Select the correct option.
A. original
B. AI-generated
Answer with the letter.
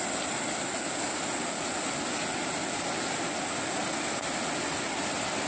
A